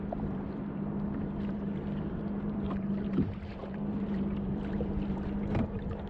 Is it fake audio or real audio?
fake